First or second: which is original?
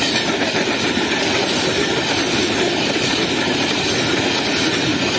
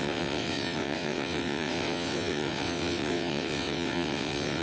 first